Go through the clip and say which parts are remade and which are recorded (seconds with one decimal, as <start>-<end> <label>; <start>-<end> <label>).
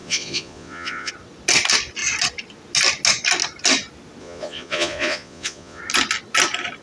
0.0-1.1 remade; 1.1-4.2 recorded; 4.2-5.8 remade; 5.8-6.8 recorded